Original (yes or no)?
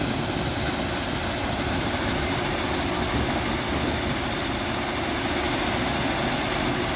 yes